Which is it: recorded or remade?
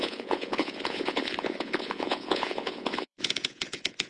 remade